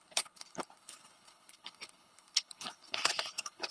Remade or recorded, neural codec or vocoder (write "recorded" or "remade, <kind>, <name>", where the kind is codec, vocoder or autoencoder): remade, codec, HILCodec